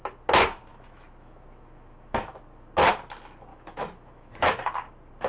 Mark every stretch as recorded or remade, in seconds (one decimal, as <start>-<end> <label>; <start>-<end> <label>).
0.0-0.7 recorded; 0.7-2.4 remade; 2.4-3.5 recorded; 3.5-4.6 remade; 4.6-5.3 recorded